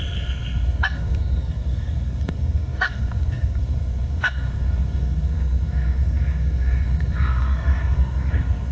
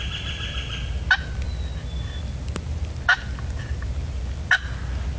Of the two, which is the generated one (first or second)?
first